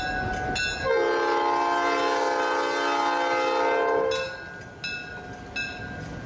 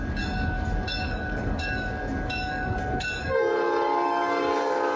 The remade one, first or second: second